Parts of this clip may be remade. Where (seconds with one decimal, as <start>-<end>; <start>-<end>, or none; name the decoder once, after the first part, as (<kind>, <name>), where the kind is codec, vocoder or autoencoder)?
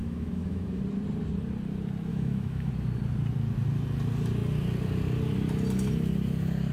0.0-0.8 (autoencoder, DAC-VAE); 2.1-2.7